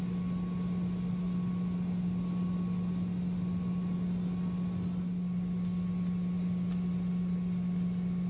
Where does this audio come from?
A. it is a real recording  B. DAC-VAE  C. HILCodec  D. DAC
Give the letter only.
A